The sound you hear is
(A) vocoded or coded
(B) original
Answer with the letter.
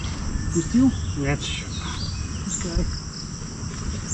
B